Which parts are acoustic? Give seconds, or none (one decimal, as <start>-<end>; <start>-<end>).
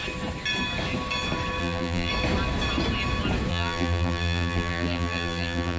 0.0-1.6; 2.1-3.5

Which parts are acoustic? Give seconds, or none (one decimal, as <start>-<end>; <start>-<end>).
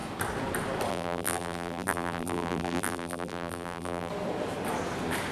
0.0-0.9; 4.1-5.3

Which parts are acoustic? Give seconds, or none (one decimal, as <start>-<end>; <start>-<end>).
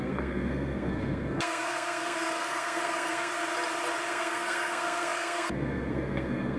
3.3-4.1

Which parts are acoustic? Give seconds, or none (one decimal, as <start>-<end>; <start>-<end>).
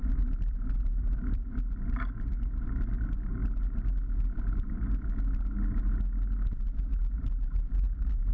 1.5-6.9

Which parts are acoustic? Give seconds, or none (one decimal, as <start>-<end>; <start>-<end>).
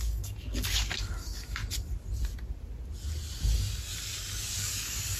1.6-3.4; 3.9-4.4